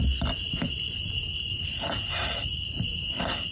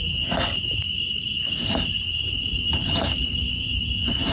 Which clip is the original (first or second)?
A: first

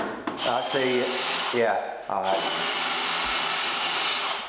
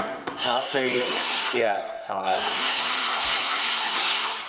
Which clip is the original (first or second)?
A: first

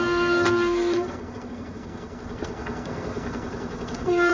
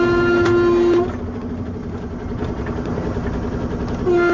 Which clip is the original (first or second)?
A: second